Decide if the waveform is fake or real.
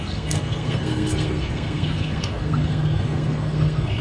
fake